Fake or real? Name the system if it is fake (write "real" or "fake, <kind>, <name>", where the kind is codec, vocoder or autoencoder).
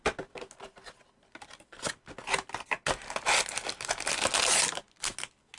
real